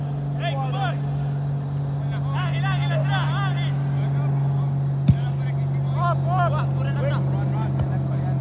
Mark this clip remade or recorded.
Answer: recorded